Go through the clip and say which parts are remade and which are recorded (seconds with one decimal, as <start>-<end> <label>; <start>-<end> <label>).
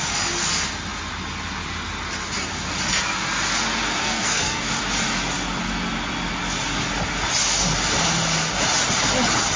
0.0-4.0 recorded; 4.0-4.6 remade; 4.6-9.6 recorded